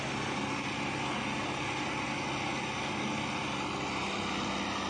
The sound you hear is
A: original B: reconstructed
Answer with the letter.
A